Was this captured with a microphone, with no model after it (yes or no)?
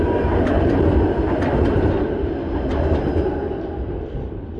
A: yes